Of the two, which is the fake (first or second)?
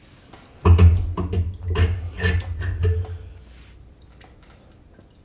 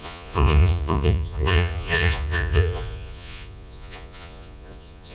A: second